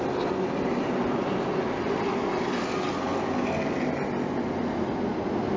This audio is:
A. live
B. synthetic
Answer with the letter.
A